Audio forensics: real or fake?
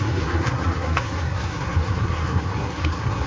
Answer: fake